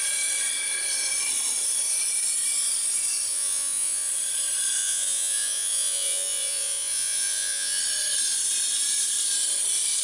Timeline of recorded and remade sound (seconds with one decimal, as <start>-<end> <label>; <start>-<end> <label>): 0.0-3.3 recorded; 3.3-4.1 remade; 4.1-4.8 recorded; 4.8-7.8 remade; 7.8-10.0 recorded